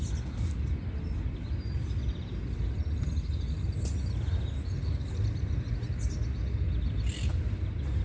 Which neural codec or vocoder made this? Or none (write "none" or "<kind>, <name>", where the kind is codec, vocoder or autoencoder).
none